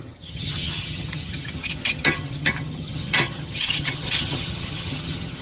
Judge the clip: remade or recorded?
remade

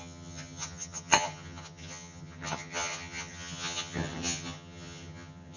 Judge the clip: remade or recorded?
remade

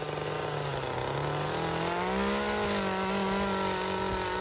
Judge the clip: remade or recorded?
recorded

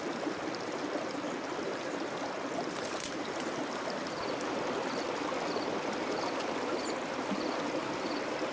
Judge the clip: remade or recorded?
recorded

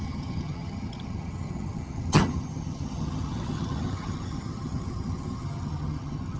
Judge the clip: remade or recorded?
remade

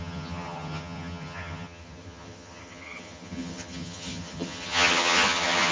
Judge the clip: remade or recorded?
remade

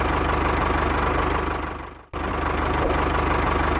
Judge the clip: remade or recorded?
recorded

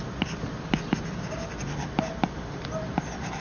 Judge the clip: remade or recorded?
recorded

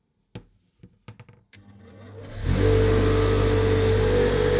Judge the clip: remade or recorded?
recorded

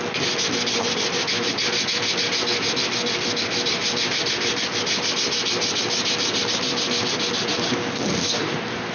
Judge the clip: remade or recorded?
recorded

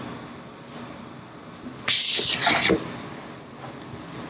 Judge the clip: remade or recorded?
recorded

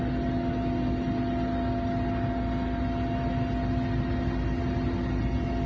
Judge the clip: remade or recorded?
recorded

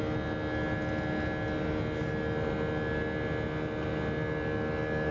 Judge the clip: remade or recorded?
recorded